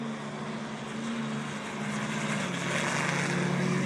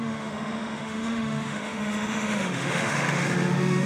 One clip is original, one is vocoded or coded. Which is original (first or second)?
first